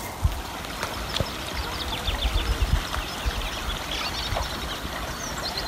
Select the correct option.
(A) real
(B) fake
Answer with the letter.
A